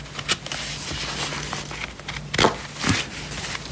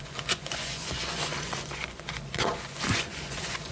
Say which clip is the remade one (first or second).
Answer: second